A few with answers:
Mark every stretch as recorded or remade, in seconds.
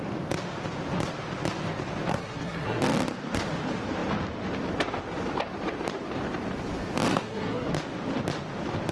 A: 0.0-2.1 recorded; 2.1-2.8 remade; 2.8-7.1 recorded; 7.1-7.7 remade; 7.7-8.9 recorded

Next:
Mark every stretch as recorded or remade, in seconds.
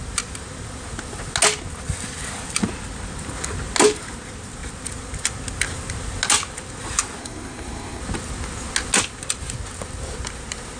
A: 0.0-7.2 recorded; 7.2-8.0 remade; 8.0-10.8 recorded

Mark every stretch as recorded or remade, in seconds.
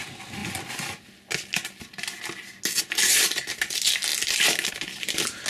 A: 0.0-5.5 recorded